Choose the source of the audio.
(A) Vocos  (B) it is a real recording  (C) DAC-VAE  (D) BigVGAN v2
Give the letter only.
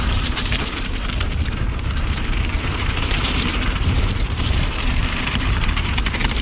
D